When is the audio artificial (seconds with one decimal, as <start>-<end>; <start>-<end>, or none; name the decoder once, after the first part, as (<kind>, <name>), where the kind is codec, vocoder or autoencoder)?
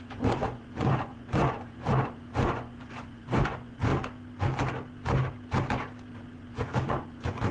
0.0-3.9 (vocoder, Vocos); 6.1-7.5